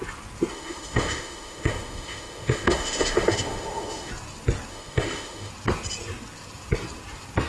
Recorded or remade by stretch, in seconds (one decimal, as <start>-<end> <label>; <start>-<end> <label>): 0.0-0.5 recorded; 0.5-4.1 remade; 4.1-4.7 recorded; 4.7-5.5 remade; 5.5-7.5 recorded